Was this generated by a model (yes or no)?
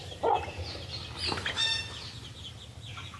no